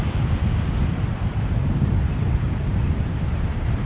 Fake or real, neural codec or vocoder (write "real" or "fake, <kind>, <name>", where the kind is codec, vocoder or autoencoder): fake, vocoder, BigVGAN v2